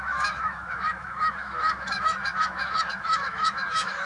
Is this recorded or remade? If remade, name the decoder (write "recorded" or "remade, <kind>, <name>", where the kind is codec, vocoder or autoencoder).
remade, autoencoder, DAC-VAE